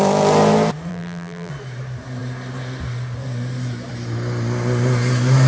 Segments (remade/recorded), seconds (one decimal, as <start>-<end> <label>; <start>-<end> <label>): 0.0-0.9 recorded; 0.9-1.5 remade; 1.5-5.5 recorded